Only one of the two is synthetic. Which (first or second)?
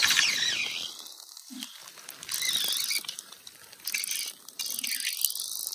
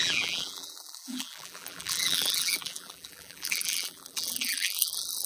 second